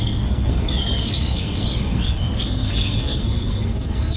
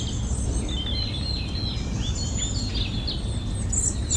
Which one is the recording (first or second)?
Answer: second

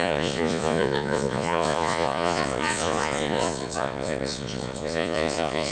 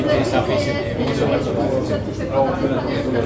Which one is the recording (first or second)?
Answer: second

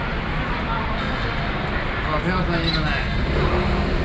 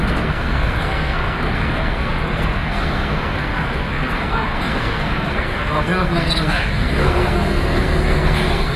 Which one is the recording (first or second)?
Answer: first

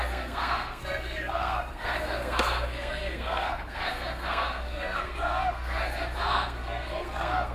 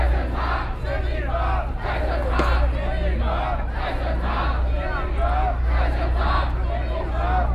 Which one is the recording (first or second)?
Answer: second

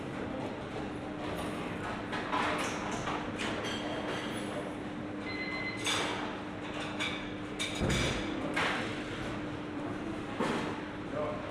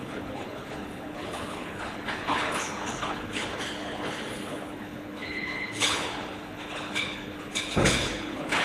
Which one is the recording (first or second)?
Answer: first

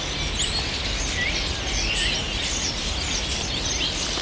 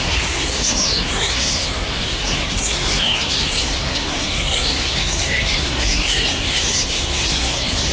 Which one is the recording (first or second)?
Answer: first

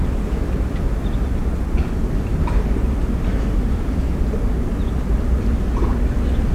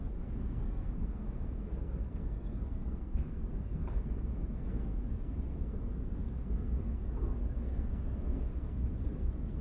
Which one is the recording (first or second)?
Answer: first